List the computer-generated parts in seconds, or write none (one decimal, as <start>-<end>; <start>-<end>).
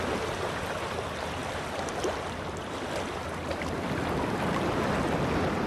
none